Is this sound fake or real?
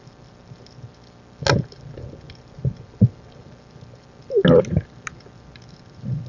real